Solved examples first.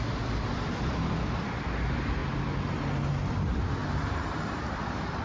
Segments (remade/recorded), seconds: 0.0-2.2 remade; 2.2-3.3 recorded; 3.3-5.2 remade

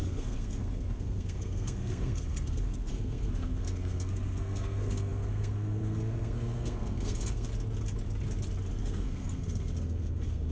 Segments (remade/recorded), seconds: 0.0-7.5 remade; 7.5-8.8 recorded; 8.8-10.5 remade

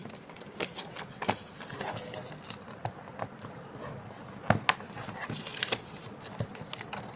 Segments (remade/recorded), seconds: 0.0-7.2 recorded

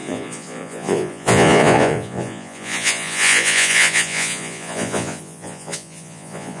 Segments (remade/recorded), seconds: 0.0-6.6 remade